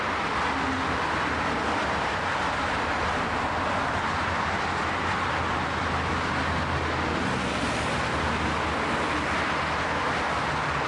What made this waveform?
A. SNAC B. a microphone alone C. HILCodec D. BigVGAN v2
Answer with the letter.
B